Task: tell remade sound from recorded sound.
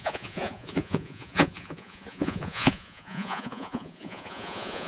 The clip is remade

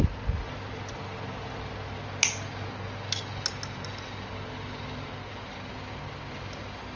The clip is recorded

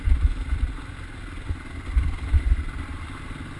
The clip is recorded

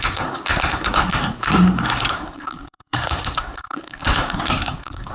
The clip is remade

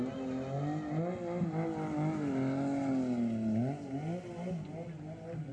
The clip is recorded